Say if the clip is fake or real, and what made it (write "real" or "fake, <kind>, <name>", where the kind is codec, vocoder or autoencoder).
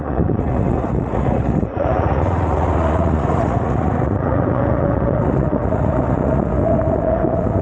fake, vocoder, Vocos